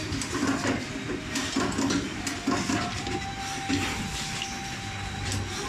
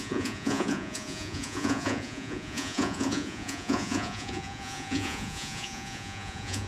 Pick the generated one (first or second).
second